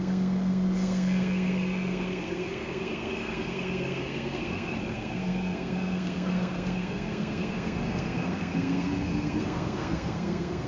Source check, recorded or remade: remade